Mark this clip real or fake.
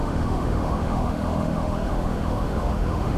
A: fake